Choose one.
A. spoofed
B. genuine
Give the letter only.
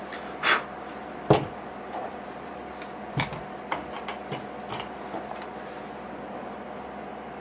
B